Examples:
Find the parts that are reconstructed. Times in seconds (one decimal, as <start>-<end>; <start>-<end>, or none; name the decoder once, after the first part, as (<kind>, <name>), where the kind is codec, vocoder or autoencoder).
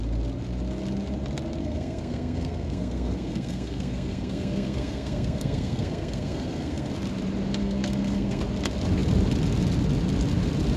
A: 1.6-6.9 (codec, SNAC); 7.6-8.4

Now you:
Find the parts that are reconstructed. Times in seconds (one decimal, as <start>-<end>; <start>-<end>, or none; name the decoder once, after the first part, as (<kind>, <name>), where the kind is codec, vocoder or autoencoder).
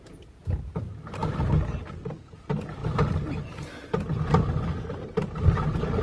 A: none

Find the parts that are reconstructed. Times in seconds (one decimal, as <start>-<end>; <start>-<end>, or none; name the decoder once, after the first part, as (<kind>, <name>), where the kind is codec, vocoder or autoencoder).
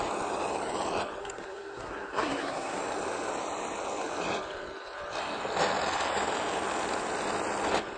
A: 1.2-2.8 (codec, SNAC)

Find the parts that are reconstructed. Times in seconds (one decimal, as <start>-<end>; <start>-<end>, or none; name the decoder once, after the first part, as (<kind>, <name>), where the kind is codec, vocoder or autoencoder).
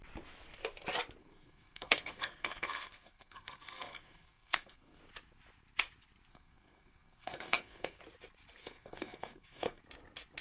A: 1.2-5.0 (codec, SNAC); 6.3-8.0; 8.6-9.8